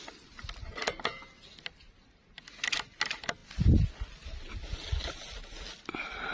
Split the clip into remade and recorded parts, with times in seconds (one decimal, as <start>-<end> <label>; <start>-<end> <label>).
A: 0.0-6.3 recorded

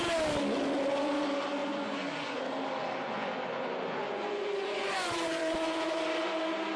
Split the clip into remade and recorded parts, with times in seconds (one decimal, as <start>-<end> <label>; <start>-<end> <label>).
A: 0.0-1.6 recorded; 1.6-2.4 remade; 2.4-3.0 recorded; 3.0-6.1 remade; 6.1-6.8 recorded

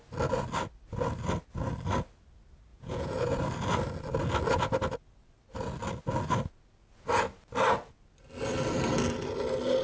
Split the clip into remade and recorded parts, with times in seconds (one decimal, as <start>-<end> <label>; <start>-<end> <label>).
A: 0.0-2.7 recorded; 2.7-3.4 remade; 3.4-9.8 recorded

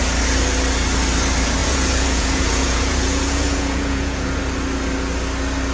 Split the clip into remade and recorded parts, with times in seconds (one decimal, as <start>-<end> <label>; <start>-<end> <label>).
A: 0.0-1.6 recorded; 1.6-4.4 remade; 4.4-5.7 recorded